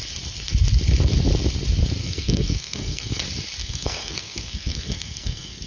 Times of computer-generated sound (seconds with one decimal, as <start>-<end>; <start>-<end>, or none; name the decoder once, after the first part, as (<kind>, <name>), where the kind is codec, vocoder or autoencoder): 2.0-3.2 (codec, SNAC); 3.6-5.7